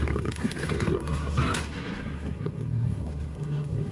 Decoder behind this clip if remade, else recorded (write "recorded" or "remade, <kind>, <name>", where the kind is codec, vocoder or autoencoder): remade, codec, SNAC